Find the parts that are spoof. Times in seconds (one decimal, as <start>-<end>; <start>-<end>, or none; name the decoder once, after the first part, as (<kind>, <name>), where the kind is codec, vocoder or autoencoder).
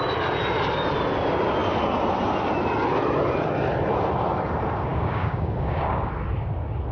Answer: 4.9-6.1 (codec, DAC)